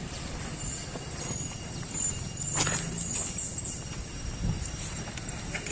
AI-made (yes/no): no